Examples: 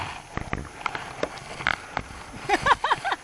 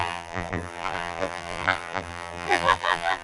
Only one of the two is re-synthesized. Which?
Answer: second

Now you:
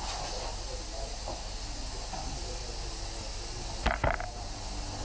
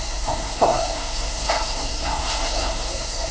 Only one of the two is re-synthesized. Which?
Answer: second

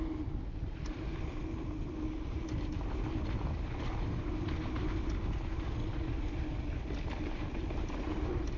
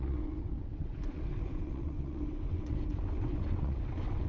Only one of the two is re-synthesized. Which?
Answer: second